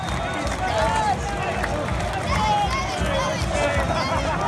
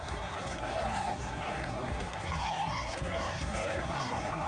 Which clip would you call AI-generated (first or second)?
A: second